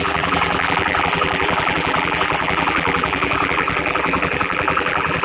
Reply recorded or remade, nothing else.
remade